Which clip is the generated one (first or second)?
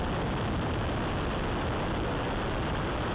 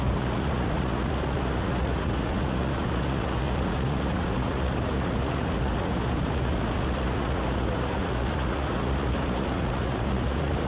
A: second